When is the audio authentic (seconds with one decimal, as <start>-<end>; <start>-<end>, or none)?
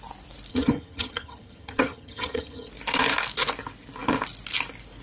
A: 0.0-0.5; 2.7-5.0